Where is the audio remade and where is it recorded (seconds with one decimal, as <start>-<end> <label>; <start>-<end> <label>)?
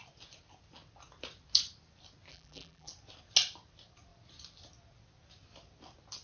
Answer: 0.0-2.3 recorded; 2.3-2.9 remade; 2.9-6.2 recorded